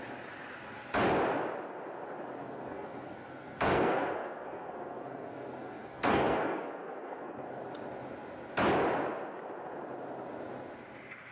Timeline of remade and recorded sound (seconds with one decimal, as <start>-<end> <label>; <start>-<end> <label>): 0.0-2.4 recorded; 2.4-7.6 remade; 7.6-11.3 recorded